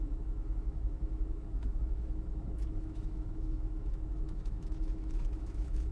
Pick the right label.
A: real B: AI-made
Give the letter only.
B